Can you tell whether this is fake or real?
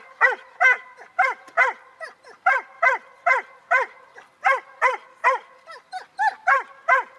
real